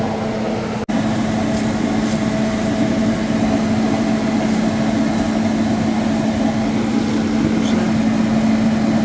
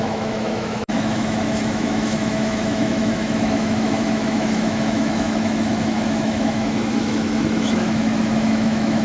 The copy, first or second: second